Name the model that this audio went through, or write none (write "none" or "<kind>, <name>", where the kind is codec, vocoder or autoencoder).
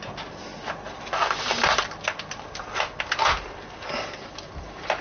none